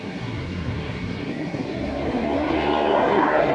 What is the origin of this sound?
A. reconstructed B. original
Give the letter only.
A